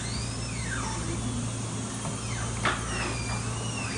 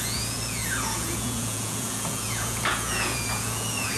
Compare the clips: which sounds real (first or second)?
first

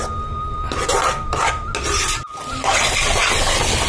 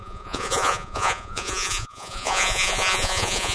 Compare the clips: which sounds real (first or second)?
first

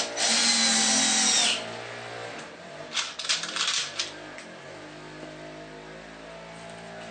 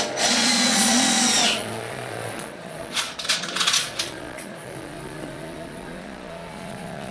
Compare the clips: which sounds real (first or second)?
first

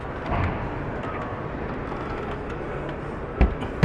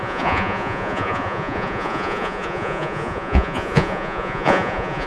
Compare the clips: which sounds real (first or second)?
first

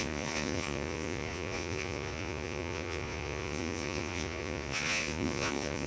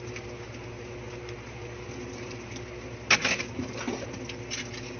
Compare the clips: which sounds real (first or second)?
second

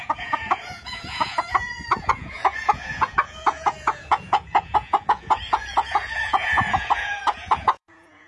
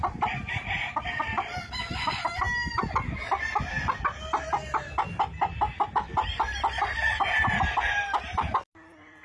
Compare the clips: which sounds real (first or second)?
second